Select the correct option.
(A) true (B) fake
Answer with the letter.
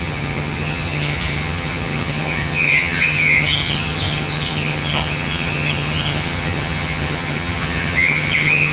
B